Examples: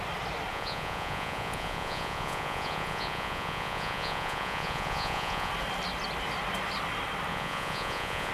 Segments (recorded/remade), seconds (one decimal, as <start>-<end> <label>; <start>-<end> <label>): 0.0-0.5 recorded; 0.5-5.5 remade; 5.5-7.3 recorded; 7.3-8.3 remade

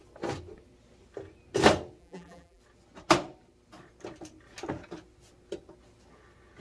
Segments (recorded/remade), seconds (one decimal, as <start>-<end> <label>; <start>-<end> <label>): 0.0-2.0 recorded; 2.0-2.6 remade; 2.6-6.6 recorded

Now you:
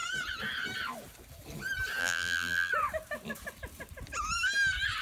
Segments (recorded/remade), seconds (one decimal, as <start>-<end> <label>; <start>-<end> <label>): 0.0-2.0 recorded; 2.0-2.7 remade; 2.7-5.0 recorded

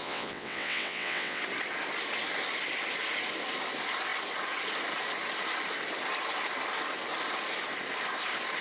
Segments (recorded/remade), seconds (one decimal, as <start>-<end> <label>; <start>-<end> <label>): 0.0-1.4 remade; 1.4-8.6 recorded